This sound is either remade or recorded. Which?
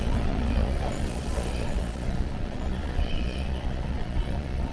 remade